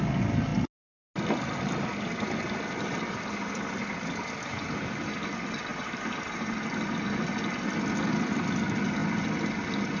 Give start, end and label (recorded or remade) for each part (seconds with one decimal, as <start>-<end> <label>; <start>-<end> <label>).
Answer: 0.0-5.7 recorded; 5.7-6.4 remade; 6.4-10.0 recorded